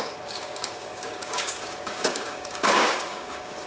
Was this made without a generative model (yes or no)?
no